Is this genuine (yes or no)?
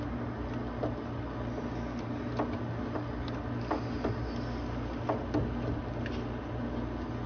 yes